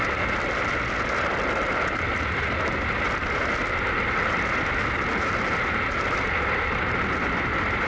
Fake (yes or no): no